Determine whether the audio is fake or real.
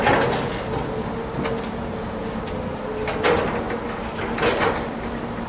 real